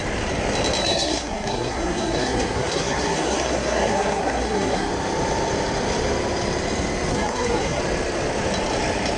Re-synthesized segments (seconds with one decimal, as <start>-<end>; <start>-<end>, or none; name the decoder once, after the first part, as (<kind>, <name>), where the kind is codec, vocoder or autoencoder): 0.8-4.9 (codec, SNAC); 7.1-7.8